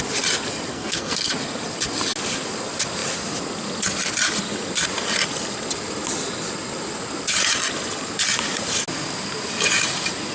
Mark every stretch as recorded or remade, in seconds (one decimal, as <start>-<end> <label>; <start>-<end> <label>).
0.0-0.7 recorded; 0.7-1.3 remade; 1.3-10.3 recorded